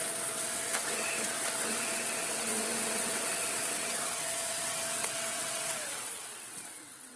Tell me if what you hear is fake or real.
fake